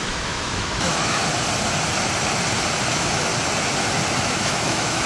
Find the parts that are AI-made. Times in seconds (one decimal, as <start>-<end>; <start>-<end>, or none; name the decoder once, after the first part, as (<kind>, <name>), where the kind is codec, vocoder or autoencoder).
0.0-1.2 (autoencoder, DAC-VAE); 2.9-3.3; 4.2-5.1